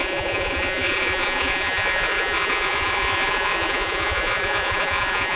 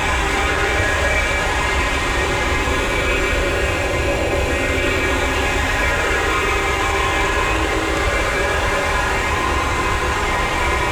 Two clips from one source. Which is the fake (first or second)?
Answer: first